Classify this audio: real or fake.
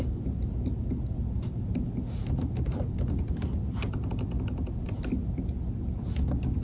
real